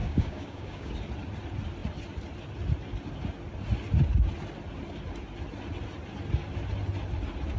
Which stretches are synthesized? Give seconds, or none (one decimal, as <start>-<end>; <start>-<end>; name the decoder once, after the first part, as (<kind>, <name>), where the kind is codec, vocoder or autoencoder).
0.0-0.9 (codec, DAC)